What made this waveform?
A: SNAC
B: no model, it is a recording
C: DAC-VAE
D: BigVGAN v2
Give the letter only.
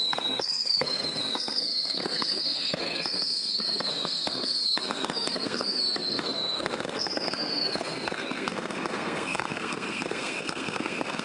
A